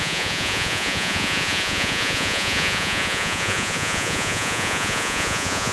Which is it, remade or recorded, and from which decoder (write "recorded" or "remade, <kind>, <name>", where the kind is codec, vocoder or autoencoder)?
remade, vocoder, Vocos